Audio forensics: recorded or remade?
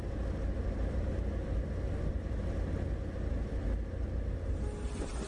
recorded